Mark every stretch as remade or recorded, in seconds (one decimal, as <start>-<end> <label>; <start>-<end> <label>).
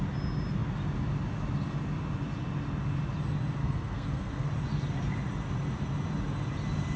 0.0-3.6 recorded; 3.6-4.5 remade; 4.5-7.0 recorded